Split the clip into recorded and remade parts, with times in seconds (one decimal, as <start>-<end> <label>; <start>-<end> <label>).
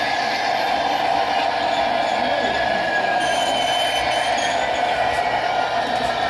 0.0-6.3 recorded